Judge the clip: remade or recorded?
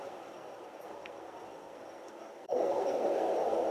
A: remade